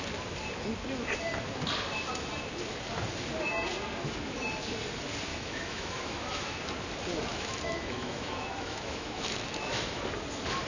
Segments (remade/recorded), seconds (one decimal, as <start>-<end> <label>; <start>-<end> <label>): 0.0-5.3 recorded; 5.3-6.6 remade; 6.6-7.3 recorded; 7.3-10.0 remade; 10.0-10.7 recorded